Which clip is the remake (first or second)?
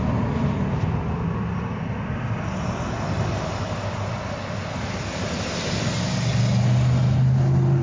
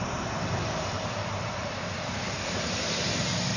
second